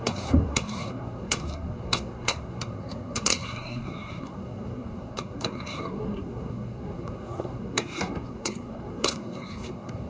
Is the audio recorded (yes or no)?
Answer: no